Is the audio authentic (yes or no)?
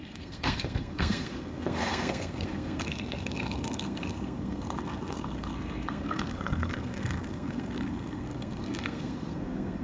no